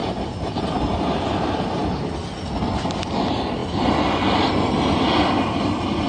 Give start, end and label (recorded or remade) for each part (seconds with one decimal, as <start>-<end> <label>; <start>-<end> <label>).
0.0-0.7 remade; 0.7-1.8 recorded; 1.8-3.2 remade; 3.2-6.1 recorded